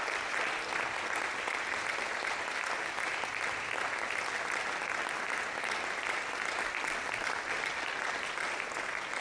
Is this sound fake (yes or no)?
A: no